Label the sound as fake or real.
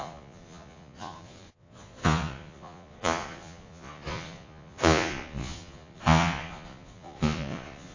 fake